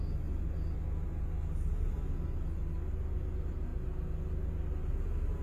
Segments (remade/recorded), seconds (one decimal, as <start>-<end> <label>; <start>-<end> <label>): 0.0-5.4 recorded